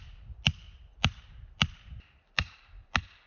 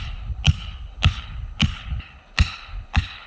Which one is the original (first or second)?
first